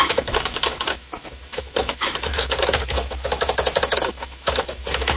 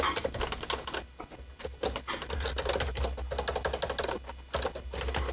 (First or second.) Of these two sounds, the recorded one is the second